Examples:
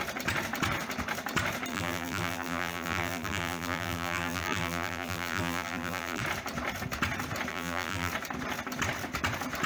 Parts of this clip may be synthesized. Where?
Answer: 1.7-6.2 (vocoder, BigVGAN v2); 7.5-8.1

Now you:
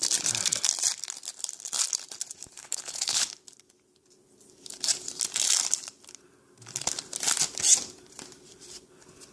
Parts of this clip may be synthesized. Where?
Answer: 2.6-3.3 (codec, HILCodec)

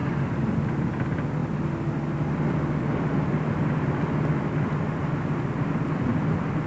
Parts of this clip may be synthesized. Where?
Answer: none

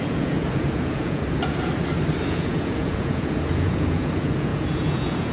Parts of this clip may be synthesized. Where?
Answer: 0.0-1.2 (vocoder, Vocos); 2.3-5.3

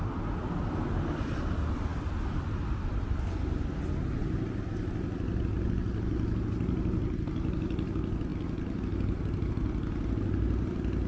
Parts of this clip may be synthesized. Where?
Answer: none

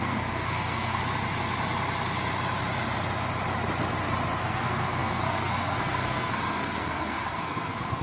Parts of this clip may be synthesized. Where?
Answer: 0.0-1.0 (codec, SNAC); 4.4-8.0